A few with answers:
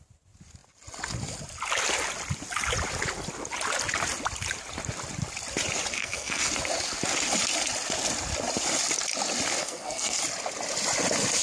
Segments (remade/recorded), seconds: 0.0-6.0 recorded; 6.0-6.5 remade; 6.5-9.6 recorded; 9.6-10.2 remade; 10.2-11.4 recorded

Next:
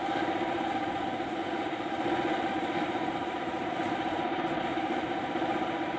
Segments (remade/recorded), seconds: 0.0-1.4 remade; 1.4-2.5 recorded; 2.5-6.0 remade

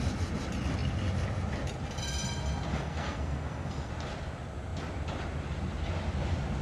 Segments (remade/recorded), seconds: 0.0-2.7 recorded; 2.7-3.9 remade; 3.9-6.6 recorded

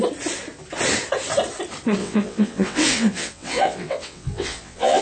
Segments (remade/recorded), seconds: 0.0-2.0 recorded; 2.0-5.0 remade